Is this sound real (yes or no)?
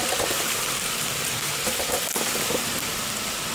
yes